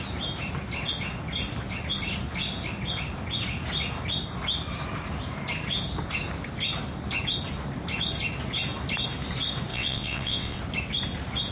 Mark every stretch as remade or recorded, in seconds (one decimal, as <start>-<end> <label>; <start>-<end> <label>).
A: 0.0-9.7 recorded; 9.7-10.6 remade; 10.6-11.5 recorded